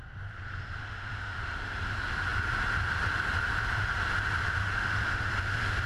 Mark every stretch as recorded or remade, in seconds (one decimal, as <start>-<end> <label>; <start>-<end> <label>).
0.0-0.8 recorded; 0.8-1.8 remade; 1.8-4.6 recorded; 4.6-5.3 remade; 5.3-5.9 recorded